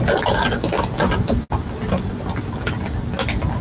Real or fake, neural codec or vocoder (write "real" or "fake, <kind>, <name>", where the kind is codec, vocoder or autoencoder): real